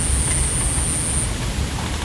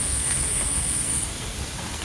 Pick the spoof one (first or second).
second